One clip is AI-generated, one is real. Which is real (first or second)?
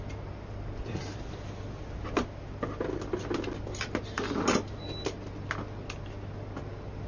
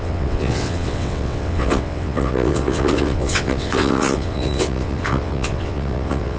first